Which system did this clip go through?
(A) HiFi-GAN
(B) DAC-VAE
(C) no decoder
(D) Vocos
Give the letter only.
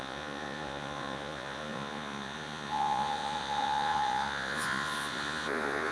D